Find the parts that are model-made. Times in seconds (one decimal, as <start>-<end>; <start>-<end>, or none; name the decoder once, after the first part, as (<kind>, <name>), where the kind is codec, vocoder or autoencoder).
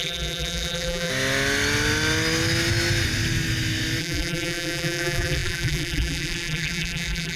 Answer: 0.0-1.1 (vocoder, BigVGAN v2); 4.0-7.4